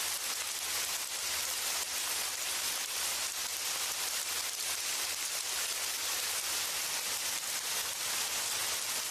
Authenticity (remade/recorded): recorded